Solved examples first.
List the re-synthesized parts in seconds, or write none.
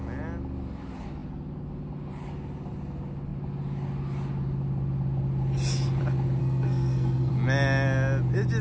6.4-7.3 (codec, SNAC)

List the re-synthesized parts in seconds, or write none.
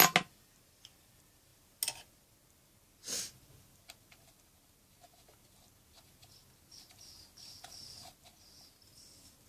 none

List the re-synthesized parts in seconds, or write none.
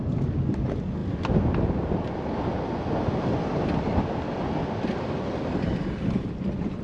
none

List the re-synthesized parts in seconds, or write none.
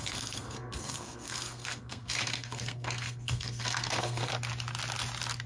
0.0-4.3 (codec, SNAC)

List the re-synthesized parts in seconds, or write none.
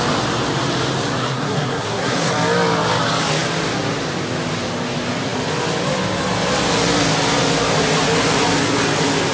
1.2-2.3 (codec, SNAC)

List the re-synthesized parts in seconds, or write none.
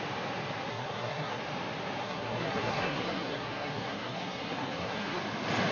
0.7-1.4 (codec, SNAC); 2.0-5.2